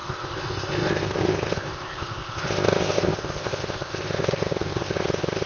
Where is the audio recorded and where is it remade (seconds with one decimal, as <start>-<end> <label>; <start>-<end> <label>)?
0.0-5.5 remade